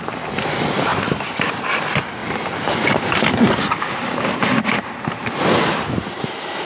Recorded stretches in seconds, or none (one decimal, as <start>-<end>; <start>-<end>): 0.0-0.9; 1.7-6.6